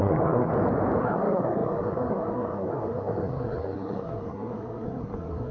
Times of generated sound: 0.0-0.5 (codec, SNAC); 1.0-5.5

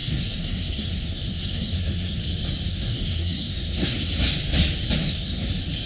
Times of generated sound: 0.0-2.2 (codec, SNAC); 2.7-4.3; 5.0-5.5

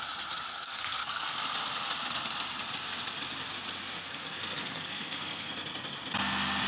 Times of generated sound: 0.5-1.4 (codec, SNAC); 4.0-5.5

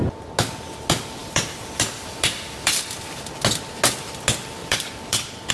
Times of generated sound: 1.2-2.8 (vocoder, BigVGAN v2); 4.6-5.5

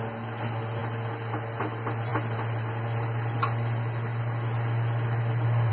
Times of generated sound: none

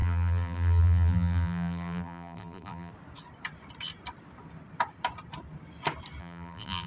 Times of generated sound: 0.0-2.9 (vocoder, BigVGAN v2); 6.2-6.9

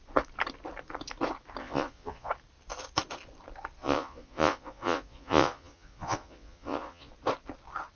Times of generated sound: 1.6-2.3 (vocoder, Vocos); 3.8-7.1

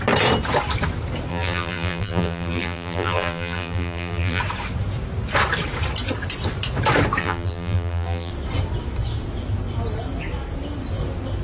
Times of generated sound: 1.3-4.4 (vocoder, BigVGAN v2); 7.2-8.3